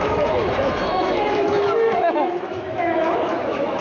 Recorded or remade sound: remade